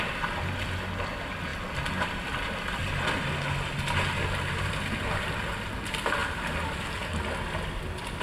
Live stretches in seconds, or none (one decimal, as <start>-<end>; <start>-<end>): 0.0-8.2